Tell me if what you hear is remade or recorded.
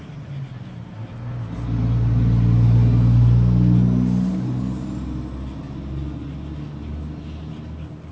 recorded